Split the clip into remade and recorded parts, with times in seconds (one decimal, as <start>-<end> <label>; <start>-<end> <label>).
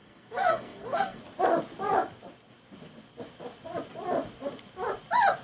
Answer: 0.0-1.2 remade; 1.2-5.4 recorded